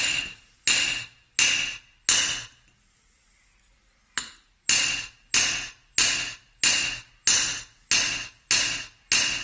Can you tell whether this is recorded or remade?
recorded